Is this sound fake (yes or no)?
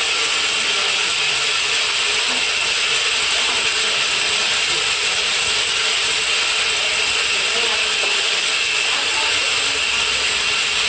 no